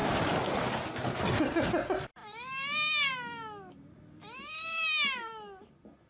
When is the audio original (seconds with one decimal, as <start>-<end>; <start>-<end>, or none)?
0.0-6.1